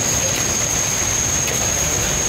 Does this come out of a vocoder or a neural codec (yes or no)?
no